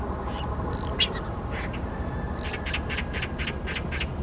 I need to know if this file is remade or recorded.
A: recorded